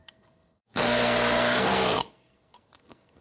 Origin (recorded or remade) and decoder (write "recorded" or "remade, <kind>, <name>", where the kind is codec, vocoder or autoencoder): remade, codec, SNAC